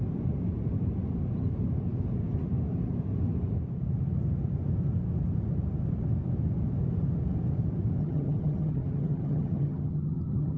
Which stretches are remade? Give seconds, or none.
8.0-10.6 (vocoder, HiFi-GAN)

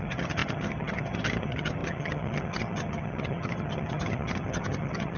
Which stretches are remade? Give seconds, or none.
0.0-5.2 (vocoder, HiFi-GAN)

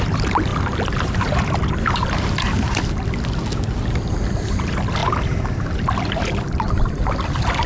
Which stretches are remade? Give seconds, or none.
none

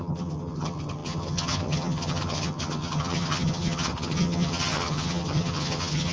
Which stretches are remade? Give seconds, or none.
0.0-6.1 (vocoder, HiFi-GAN)

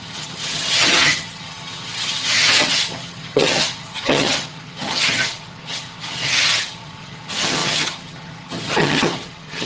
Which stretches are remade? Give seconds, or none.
0.0-9.7 (vocoder, HiFi-GAN)

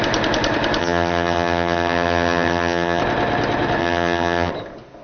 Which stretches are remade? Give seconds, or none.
0.8-3.0 (vocoder, HiFi-GAN); 3.8-4.5

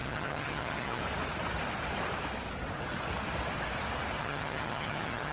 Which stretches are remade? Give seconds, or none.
0.0-1.0 (vocoder, HiFi-GAN); 4.2-5.3